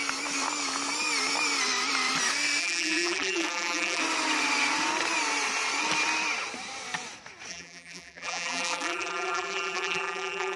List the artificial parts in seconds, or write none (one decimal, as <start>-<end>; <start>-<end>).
2.6-4.0; 7.5-10.6